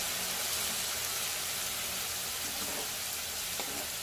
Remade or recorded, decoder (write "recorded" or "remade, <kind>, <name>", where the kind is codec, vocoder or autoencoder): recorded